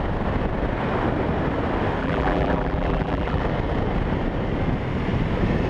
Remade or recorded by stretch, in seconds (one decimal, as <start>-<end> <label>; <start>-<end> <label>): 0.0-2.0 recorded; 2.0-3.4 remade; 3.4-5.7 recorded